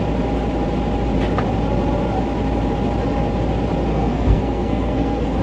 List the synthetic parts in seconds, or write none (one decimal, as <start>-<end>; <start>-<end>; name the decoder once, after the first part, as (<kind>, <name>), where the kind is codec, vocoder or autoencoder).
3.9-5.4 (codec, SNAC)